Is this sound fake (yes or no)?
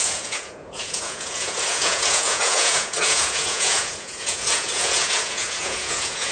yes